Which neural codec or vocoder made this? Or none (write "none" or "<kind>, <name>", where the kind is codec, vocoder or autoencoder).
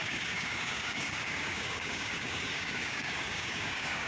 codec, DAC